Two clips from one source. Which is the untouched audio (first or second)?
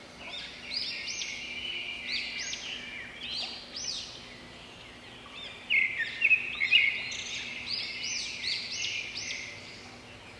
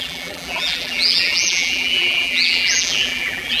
first